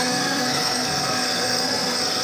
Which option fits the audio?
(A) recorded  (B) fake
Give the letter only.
B